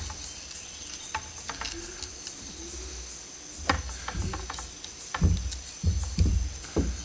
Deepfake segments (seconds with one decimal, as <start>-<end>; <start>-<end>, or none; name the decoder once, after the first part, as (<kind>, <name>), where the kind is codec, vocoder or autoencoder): none